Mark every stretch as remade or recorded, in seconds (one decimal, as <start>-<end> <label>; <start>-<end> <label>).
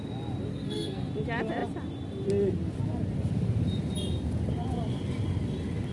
0.0-0.5 recorded; 0.5-1.1 remade; 1.1-5.9 recorded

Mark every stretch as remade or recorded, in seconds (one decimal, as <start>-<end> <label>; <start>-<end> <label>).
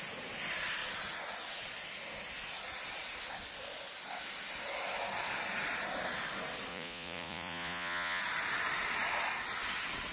0.0-6.7 recorded; 6.7-8.2 remade; 8.2-10.1 recorded